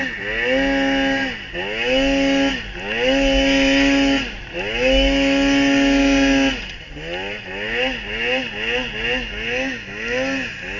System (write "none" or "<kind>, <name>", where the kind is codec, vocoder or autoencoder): none